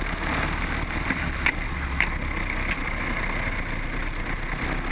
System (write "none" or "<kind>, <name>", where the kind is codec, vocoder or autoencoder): none